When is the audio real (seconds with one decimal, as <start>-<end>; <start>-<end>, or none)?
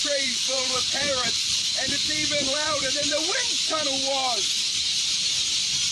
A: 3.5-5.9